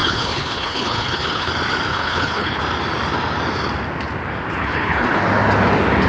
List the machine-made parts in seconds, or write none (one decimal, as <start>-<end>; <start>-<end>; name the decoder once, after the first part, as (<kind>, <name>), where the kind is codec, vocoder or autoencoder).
0.0-1.5 (codec, HILCodec); 1.9-2.6; 4.6-5.2